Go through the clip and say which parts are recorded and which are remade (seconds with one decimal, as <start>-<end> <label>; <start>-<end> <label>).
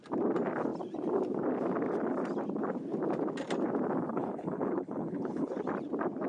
0.0-4.1 recorded; 4.1-5.5 remade; 5.5-6.3 recorded